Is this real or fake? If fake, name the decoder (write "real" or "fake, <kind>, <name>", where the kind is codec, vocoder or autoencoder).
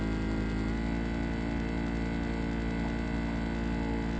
real